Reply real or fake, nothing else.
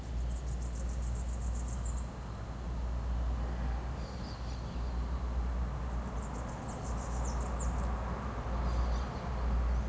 real